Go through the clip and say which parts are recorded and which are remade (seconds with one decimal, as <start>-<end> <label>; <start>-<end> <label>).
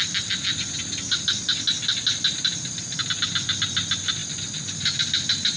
0.0-5.6 recorded